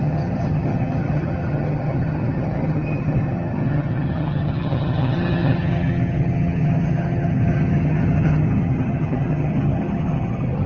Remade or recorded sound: remade